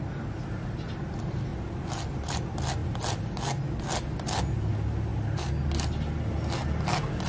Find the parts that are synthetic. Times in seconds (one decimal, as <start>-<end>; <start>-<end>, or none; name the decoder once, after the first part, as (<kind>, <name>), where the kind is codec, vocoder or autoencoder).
none